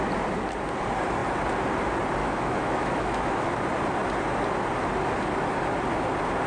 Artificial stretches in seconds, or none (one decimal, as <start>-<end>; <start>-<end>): 2.2-3.6